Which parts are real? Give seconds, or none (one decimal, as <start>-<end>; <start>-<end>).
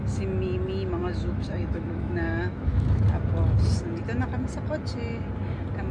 0.0-1.0; 3.0-5.9